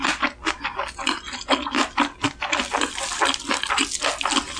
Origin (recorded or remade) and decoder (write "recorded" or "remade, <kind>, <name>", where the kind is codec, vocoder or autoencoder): recorded